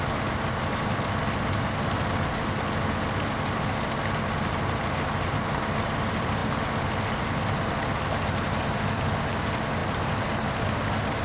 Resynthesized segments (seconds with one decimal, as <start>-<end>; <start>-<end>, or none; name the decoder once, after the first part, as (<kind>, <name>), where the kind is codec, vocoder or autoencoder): none